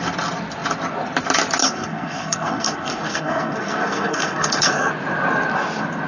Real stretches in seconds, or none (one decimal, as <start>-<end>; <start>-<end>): 0.0-1.6; 4.9-6.1